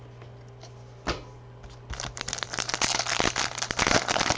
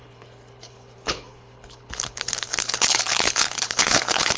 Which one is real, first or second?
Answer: first